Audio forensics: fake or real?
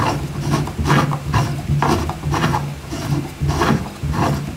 real